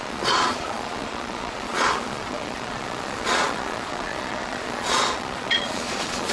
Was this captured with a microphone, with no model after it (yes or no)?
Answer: no